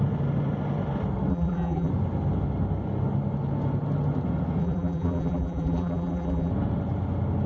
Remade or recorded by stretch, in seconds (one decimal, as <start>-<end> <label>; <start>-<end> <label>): 0.0-1.3 recorded; 1.3-1.9 remade; 1.9-4.6 recorded; 4.6-6.5 remade; 6.5-7.5 recorded